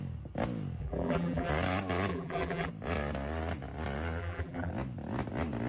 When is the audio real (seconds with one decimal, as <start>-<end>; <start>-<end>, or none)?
0.0-0.8; 1.5-2.1; 2.7-4.2; 4.7-5.7